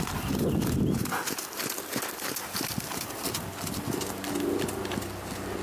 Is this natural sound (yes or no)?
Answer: yes